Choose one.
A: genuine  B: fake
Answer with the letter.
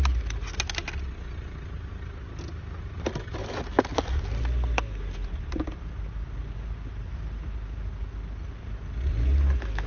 A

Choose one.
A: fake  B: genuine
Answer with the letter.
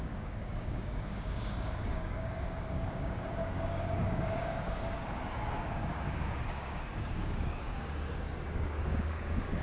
A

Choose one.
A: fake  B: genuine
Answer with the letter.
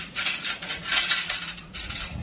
A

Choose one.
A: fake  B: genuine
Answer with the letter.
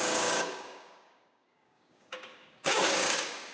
A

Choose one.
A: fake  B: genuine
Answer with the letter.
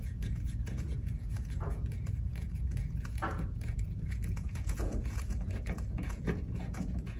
A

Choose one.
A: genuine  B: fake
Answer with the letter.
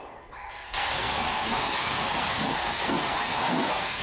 B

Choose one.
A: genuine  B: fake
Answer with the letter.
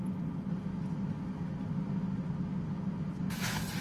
A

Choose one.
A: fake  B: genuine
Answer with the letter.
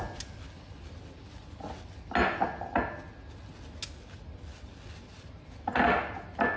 B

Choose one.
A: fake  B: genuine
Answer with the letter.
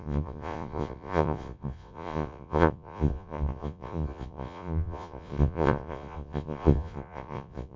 A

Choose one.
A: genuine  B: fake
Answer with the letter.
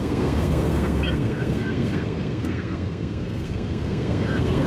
B